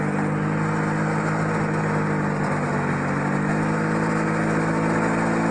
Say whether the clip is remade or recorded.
recorded